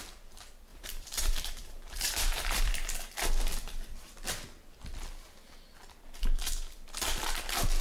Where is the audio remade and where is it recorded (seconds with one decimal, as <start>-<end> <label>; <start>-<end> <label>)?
0.0-0.7 recorded; 0.7-2.7 remade; 2.7-7.8 recorded